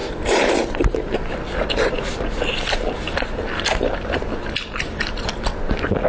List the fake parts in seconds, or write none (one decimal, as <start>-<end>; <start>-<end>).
0.0-0.5